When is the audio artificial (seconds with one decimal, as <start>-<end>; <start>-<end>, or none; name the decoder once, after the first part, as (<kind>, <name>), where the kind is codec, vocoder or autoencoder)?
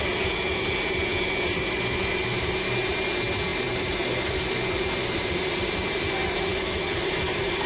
none